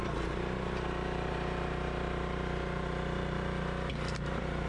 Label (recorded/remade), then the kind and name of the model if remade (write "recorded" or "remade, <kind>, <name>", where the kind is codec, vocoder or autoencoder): remade, vocoder, BigVGAN v2